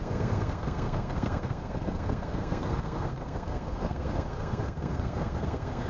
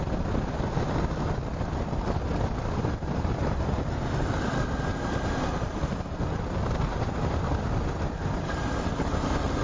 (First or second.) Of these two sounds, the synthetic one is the first